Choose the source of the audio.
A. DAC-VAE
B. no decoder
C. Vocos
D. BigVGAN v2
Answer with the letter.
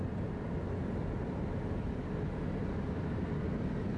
B